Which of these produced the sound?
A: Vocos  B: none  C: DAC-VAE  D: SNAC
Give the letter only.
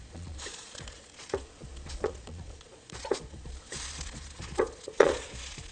A